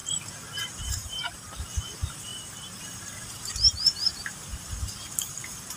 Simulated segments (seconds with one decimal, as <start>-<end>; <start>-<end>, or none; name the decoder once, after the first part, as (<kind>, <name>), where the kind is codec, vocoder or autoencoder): 0.9-5.8 (vocoder, BigVGAN v2)